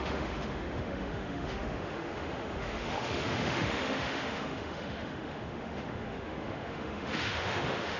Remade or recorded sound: remade